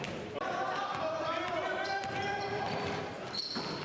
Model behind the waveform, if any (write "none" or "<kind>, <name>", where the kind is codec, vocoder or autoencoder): vocoder, BigVGAN v2